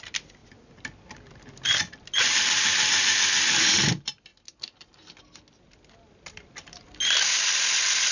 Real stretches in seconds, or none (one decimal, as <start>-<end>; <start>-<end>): 4.3-5.5